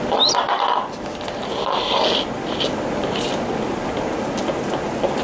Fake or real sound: real